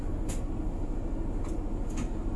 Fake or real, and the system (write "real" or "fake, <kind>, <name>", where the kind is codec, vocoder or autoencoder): real